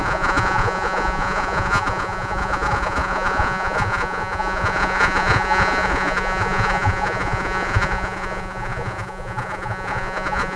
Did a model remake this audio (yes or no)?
yes